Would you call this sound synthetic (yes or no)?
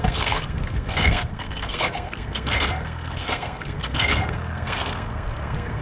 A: yes